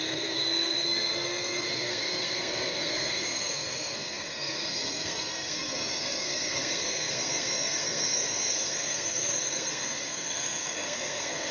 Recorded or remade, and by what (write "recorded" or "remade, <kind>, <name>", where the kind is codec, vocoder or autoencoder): remade, codec, SNAC